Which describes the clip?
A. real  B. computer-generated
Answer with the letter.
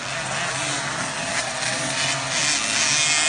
A